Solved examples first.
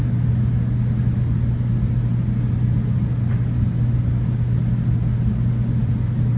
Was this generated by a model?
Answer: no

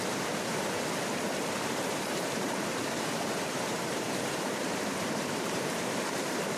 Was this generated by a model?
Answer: yes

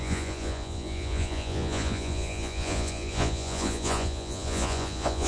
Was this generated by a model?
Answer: yes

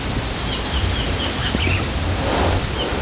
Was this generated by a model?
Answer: no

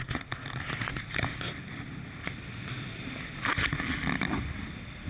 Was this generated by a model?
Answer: no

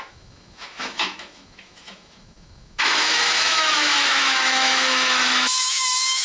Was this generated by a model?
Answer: yes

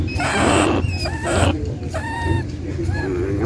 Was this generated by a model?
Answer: no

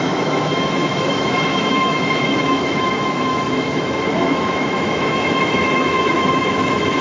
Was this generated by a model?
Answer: yes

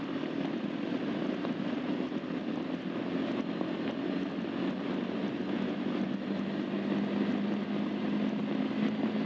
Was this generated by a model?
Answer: no